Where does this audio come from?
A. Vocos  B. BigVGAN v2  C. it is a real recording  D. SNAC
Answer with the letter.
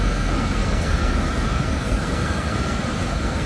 D